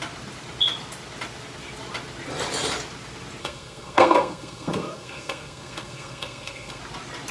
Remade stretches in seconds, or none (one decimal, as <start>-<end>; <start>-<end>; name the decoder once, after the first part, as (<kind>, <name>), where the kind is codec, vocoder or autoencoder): 3.4-6.8 (codec, SNAC)